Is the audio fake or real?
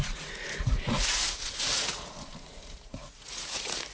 fake